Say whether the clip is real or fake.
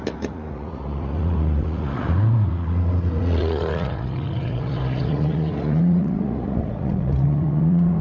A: fake